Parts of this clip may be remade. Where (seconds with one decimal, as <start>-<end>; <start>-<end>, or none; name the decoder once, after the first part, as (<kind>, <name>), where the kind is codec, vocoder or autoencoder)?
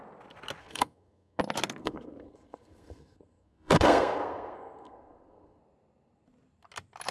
0.6-1.4 (codec, SNAC); 1.8-5.6